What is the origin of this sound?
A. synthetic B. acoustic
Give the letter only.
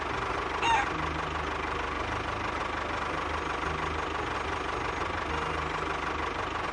B